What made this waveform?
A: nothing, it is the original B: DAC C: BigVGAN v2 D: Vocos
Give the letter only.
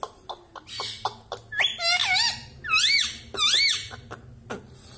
A